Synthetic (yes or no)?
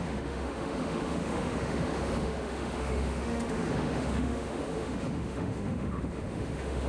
yes